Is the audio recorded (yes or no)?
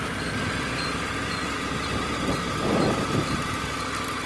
yes